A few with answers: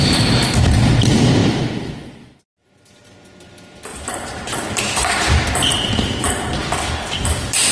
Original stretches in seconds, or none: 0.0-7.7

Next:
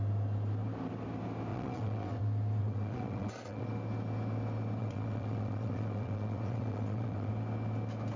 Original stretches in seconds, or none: 0.0-1.5; 2.2-2.6; 3.7-4.8; 7.3-8.2

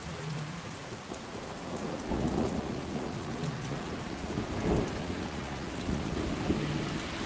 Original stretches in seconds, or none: 4.4-5.0; 6.2-7.3

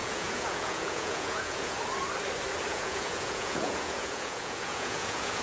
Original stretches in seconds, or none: 1.8-2.7